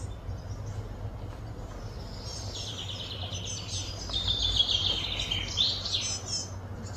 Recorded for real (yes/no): yes